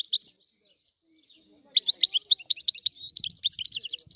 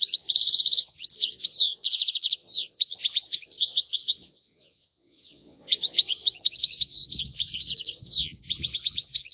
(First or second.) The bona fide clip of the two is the first